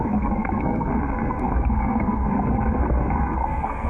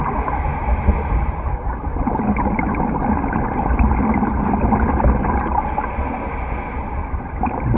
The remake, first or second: first